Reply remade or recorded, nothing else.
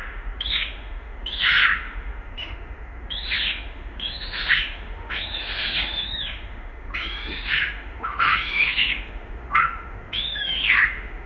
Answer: remade